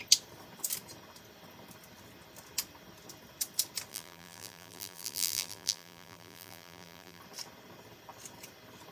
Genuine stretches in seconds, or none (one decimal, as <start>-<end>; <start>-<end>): 0.0-3.9; 7.2-8.9